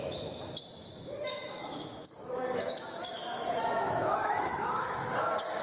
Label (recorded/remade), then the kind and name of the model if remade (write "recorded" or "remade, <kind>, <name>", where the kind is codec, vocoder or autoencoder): remade, autoencoder, DAC-VAE